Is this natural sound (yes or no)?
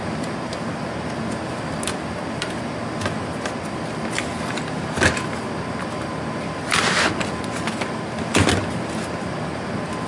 yes